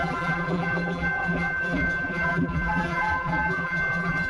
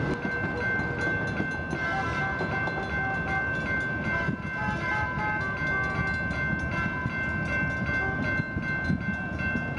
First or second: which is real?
second